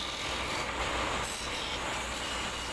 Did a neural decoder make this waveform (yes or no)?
no